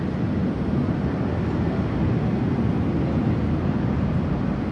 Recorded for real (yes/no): yes